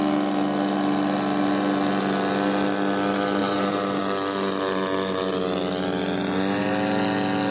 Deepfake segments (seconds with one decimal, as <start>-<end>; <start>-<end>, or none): 3.4-4.0